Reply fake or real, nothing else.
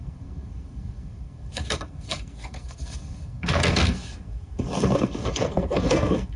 fake